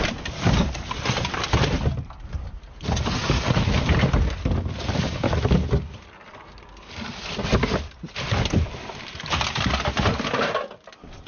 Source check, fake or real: real